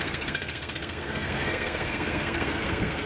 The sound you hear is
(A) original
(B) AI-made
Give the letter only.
B